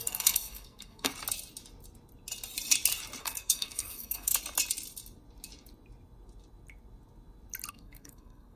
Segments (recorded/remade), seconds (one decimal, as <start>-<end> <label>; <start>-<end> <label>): 0.0-1.1 remade; 1.1-3.2 recorded; 3.2-4.3 remade; 4.3-7.7 recorded; 7.7-8.6 remade